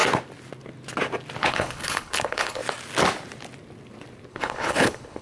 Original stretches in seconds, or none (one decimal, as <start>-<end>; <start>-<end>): 0.0-1.4; 2.6-4.3